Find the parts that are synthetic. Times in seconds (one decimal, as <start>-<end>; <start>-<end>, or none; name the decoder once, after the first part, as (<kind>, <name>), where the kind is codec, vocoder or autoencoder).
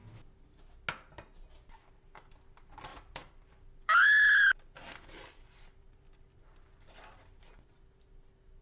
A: 2.9-7.4 (vocoder, BigVGAN v2)